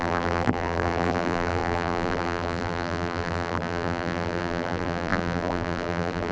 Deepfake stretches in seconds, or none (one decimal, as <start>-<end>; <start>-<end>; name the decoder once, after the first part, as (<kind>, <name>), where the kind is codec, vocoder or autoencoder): 0.0-6.3 (vocoder, BigVGAN v2)